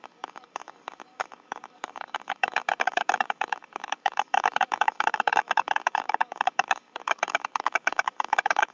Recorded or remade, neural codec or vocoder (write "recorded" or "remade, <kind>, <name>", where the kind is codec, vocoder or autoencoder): remade, codec, DAC